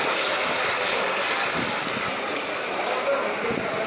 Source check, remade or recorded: recorded